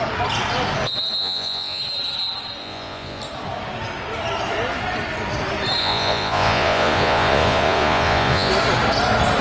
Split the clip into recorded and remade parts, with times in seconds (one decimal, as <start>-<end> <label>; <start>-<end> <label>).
0.0-1.2 recorded; 1.2-1.8 remade; 1.8-2.6 recorded; 2.6-3.2 remade; 3.2-5.8 recorded; 5.8-8.5 remade; 8.5-9.4 recorded